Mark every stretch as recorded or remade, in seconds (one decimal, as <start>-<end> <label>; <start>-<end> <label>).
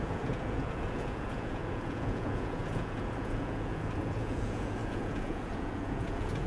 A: 0.0-6.5 remade